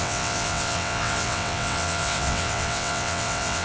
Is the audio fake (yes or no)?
yes